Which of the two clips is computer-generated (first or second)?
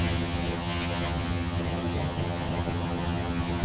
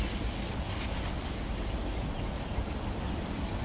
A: first